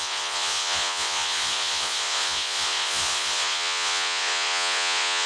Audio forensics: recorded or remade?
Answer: remade